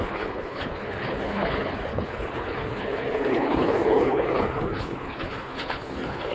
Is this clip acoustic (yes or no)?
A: no